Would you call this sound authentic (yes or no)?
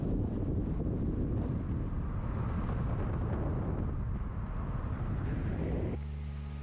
yes